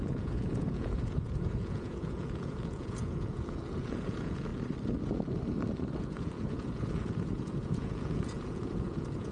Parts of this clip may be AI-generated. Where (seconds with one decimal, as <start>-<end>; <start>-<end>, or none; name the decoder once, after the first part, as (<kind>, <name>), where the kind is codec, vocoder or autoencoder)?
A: 0.0-4.5 (vocoder, Vocos); 6.0-9.3